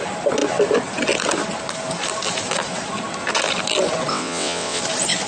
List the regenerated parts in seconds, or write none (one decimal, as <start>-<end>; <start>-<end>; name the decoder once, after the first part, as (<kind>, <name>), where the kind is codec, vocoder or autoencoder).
4.1-4.8 (vocoder, WaveNeXt)